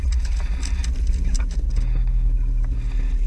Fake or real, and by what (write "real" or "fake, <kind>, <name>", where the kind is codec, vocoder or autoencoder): real